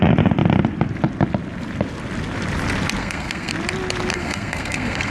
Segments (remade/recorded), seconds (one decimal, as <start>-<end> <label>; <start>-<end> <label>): 0.0-3.0 recorded; 3.0-3.5 remade; 3.5-4.1 recorded; 4.1-5.1 remade